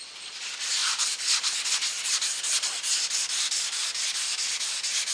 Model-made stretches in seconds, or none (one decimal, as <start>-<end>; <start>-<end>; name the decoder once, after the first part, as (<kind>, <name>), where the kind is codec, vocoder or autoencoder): none